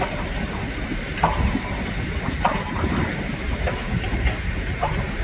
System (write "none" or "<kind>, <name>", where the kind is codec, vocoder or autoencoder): vocoder, BigVGAN v2